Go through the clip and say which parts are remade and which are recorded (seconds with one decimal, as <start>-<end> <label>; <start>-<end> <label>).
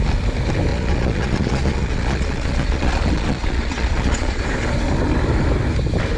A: 0.0-0.7 recorded; 0.7-4.4 remade; 4.4-6.2 recorded